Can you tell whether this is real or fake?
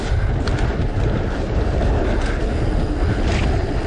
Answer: real